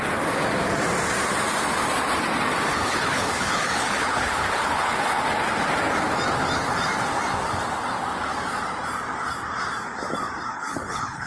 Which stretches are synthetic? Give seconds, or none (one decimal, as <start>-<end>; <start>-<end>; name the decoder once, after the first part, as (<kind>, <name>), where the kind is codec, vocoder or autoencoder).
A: 2.7-5.2 (codec, HILCodec); 10.5-11.3